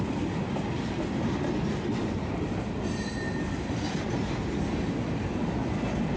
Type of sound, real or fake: real